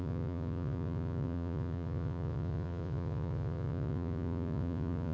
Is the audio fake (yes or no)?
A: yes